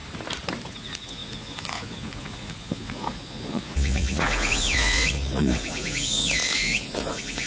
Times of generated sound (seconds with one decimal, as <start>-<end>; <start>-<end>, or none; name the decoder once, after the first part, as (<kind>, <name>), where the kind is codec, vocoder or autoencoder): 0.7-7.5 (vocoder, Vocos)